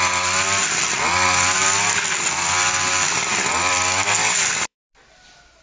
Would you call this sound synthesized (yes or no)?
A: no